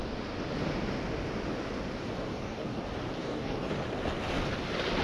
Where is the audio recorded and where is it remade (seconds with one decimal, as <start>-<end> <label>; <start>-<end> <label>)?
0.0-2.3 recorded; 2.3-2.8 remade; 2.8-3.2 recorded; 3.2-3.7 remade; 3.7-5.0 recorded